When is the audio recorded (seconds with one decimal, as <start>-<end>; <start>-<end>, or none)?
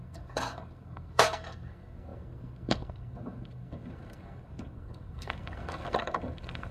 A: none